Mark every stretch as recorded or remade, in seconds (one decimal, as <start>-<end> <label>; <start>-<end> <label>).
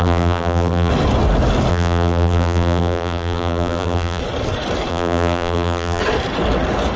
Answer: 0.0-0.9 remade; 0.9-1.7 recorded; 1.7-4.2 remade; 4.2-4.9 recorded; 4.9-6.0 remade; 6.0-7.0 recorded